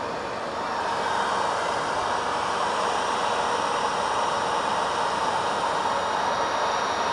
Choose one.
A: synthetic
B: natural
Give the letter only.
B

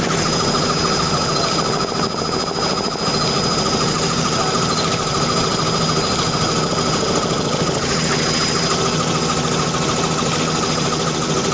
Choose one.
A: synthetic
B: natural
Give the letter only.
B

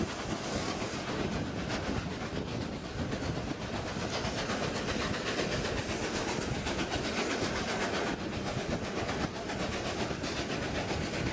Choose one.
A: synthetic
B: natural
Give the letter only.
B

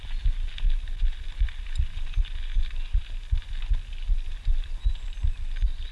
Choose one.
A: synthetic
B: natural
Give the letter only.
B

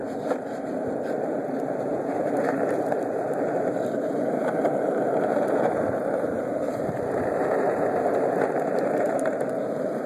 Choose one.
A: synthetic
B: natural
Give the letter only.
A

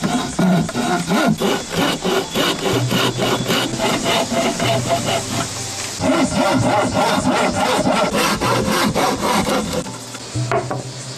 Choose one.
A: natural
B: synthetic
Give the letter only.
A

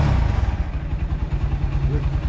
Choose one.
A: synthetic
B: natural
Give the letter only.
B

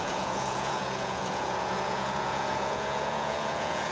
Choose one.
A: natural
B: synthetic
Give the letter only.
B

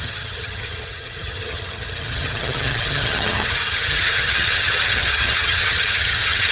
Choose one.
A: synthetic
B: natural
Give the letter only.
A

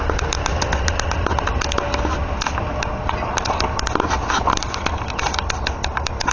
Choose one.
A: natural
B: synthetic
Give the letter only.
A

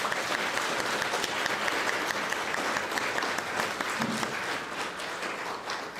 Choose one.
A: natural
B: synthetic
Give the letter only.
A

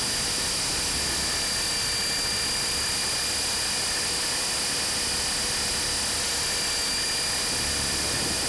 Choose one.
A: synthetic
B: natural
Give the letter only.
B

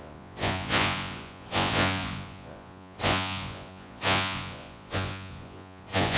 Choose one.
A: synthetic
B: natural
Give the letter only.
A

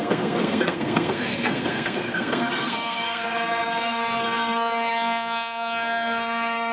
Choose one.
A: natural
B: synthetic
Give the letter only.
B